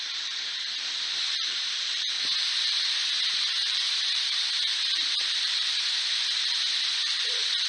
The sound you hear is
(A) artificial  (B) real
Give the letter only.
A